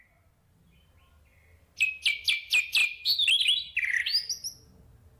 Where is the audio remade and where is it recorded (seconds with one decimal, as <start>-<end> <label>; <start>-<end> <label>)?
0.0-5.2 recorded